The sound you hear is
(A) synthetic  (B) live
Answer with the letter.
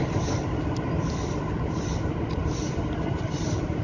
B